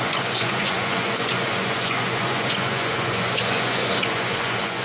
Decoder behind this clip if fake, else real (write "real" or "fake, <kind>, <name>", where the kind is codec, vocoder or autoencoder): fake, vocoder, Vocos